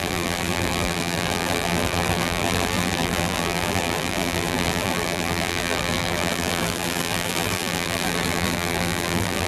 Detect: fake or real fake